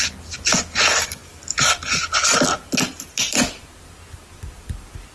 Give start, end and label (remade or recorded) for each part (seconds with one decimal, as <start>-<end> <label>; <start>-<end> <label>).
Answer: 0.0-5.1 recorded